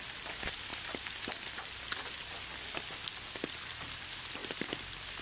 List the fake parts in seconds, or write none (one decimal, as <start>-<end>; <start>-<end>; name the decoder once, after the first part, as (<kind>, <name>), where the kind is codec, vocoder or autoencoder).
none